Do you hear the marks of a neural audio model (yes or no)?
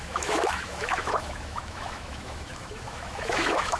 yes